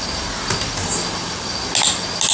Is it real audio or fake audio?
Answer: real